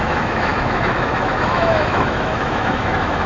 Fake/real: fake